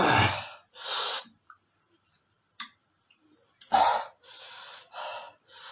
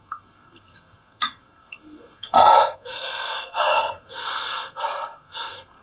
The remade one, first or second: second